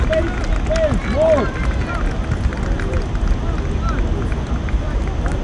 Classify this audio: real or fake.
real